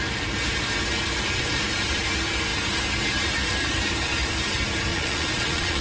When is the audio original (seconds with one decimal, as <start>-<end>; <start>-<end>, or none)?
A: 0.0-4.9